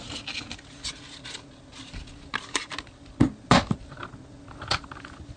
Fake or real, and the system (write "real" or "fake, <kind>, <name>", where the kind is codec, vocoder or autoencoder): real